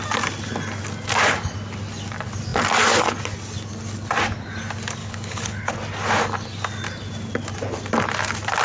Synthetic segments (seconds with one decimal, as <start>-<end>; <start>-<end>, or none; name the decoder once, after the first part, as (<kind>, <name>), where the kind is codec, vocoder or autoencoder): 5.0-5.7 (codec, HILCodec)